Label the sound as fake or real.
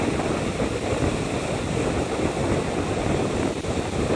real